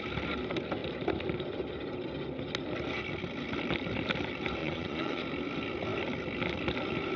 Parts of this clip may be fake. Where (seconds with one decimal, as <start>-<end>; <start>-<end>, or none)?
4.6-5.2